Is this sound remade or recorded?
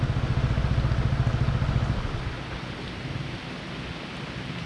recorded